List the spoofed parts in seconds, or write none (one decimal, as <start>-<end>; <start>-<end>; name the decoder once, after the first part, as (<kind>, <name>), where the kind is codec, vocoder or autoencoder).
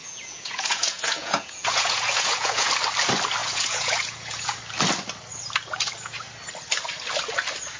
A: 0.0-2.7 (vocoder, Vocos); 3.4-4.6